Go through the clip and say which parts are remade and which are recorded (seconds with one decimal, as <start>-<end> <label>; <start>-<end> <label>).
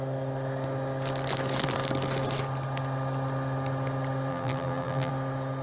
0.0-4.3 recorded; 4.3-5.1 remade; 5.1-5.6 recorded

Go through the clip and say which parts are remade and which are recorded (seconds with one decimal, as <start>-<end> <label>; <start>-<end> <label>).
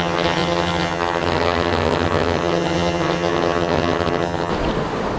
0.0-4.5 remade; 4.5-5.2 recorded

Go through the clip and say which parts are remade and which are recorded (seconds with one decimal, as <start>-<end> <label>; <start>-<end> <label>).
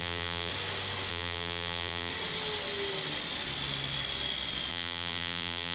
0.0-0.5 remade; 0.5-1.1 recorded; 1.1-2.1 remade; 2.1-4.7 recorded; 4.7-5.7 remade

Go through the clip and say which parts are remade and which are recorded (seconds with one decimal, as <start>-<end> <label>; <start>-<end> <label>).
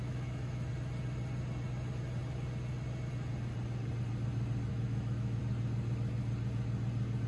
0.0-0.7 remade; 0.7-4.7 recorded; 4.7-5.4 remade; 5.4-7.3 recorded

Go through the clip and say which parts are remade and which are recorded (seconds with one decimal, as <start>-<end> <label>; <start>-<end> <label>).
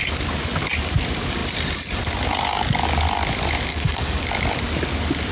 0.0-3.7 recorded; 3.7-4.2 remade; 4.2-5.3 recorded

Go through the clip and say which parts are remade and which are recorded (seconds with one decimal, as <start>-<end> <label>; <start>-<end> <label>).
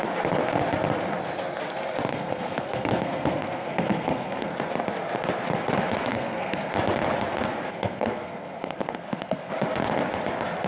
0.0-2.1 recorded; 2.1-4.5 remade; 4.5-6.1 recorded; 6.1-6.7 remade; 6.7-7.7 recorded; 7.7-9.5 remade; 9.5-10.7 recorded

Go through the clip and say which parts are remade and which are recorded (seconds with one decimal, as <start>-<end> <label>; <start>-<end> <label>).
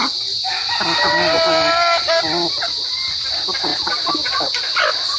0.0-5.2 recorded